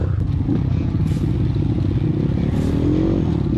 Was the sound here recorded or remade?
recorded